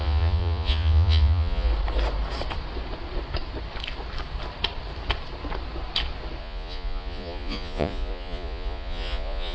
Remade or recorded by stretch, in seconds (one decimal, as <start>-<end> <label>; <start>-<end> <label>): 0.0-1.7 remade; 1.7-6.4 recorded; 6.4-9.5 remade